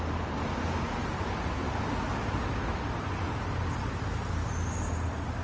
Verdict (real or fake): real